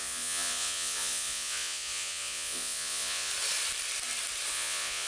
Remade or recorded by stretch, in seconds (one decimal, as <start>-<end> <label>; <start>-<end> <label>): 0.0-3.3 remade; 3.3-4.5 recorded; 4.5-5.1 remade